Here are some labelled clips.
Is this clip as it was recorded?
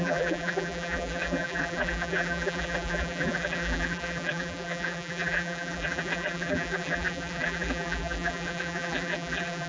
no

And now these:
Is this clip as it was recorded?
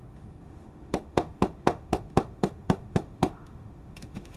no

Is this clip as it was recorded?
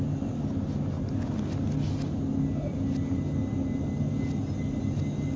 yes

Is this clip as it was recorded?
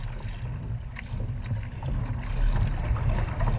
yes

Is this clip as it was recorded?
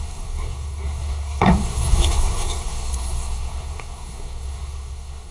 no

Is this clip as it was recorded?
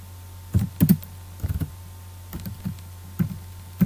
yes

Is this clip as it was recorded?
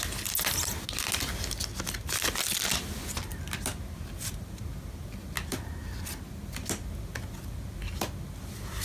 yes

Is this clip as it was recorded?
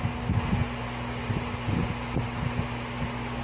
yes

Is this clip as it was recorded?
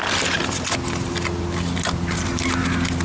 yes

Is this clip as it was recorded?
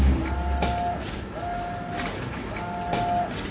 yes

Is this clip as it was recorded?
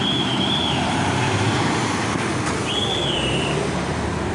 no